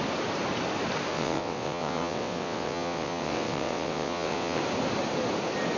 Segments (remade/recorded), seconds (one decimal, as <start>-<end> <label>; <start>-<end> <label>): 0.0-1.1 recorded; 1.1-4.6 remade; 4.6-5.8 recorded